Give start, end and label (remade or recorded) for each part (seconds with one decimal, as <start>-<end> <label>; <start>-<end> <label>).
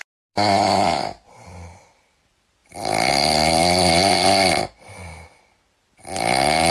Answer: 0.0-2.6 recorded; 2.6-3.1 remade; 3.1-6.7 recorded